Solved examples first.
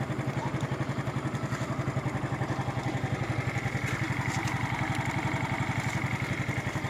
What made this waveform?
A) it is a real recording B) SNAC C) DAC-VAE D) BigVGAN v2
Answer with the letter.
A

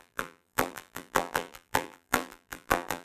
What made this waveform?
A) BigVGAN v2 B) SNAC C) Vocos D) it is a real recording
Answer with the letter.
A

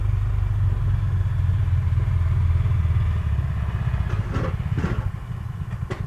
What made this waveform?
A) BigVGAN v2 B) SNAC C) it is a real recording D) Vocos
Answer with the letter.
C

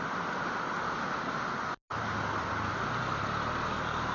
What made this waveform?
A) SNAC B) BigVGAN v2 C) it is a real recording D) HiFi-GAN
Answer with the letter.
C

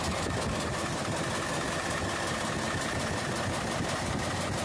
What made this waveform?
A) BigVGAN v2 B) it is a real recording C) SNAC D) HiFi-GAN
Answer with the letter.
B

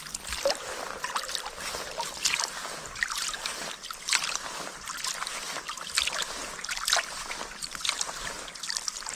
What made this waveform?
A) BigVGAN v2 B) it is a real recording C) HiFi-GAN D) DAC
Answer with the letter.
B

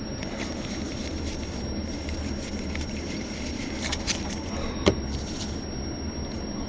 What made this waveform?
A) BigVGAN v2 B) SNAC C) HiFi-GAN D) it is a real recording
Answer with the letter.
A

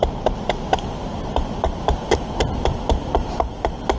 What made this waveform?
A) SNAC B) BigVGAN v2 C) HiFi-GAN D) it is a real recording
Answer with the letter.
D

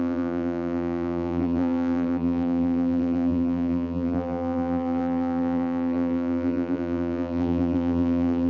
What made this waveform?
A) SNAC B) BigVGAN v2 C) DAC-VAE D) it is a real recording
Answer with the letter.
B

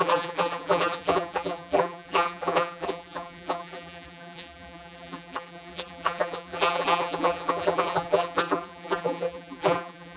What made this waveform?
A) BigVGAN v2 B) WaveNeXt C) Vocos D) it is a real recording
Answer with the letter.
A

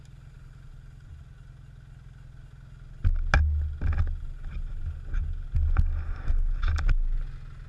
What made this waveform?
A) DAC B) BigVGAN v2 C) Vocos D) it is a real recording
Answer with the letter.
D